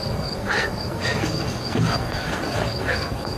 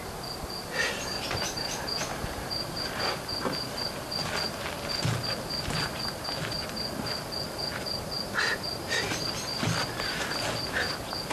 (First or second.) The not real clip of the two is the first